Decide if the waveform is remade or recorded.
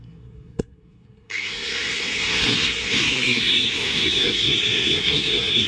remade